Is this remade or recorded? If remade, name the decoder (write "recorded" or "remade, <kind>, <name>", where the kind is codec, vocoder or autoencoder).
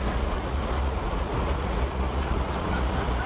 remade, vocoder, Vocos